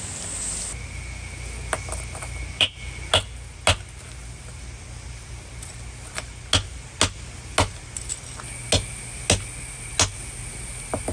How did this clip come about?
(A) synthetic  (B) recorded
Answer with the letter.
B